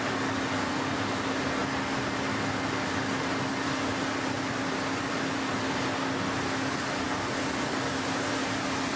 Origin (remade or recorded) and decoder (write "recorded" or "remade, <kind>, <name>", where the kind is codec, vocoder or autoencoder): recorded